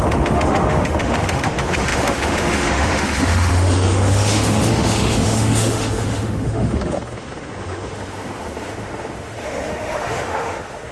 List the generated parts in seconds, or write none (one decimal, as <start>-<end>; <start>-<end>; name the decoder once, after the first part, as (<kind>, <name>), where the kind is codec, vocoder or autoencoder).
0.0-10.9 (autoencoder, DAC-VAE)

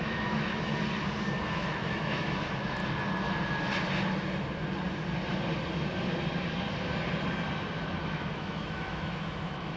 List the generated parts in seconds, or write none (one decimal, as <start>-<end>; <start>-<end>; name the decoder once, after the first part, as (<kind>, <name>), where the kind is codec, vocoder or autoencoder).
0.0-0.7 (autoencoder, DAC-VAE); 1.5-2.8; 8.0-9.8

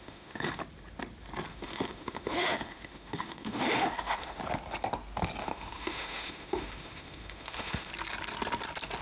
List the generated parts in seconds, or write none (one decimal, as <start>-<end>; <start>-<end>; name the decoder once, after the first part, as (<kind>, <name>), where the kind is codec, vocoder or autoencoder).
0.0-0.6 (autoencoder, DAC-VAE); 1.5-4.4; 5.4-7.9

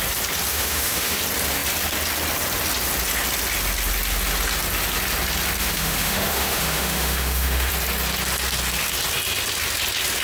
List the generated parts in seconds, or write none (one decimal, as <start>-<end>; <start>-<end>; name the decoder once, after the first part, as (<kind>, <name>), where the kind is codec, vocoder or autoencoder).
0.5-1.2 (autoencoder, DAC-VAE); 5.6-7.7

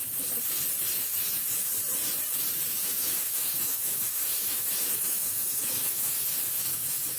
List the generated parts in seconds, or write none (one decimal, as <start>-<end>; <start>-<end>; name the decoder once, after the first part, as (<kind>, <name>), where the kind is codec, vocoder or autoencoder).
1.0-1.7 (autoencoder, DAC-VAE); 2.7-7.2

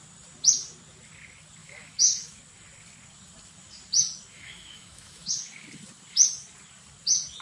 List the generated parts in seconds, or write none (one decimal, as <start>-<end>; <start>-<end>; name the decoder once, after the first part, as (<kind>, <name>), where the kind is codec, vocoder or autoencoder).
1.6-2.4 (autoencoder, DAC-VAE); 4.3-5.4

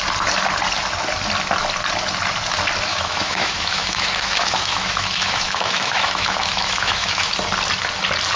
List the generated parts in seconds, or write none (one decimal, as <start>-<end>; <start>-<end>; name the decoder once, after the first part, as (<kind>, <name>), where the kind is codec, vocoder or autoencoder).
2.9-7.3 (autoencoder, DAC-VAE)